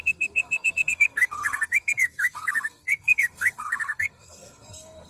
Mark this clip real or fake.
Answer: fake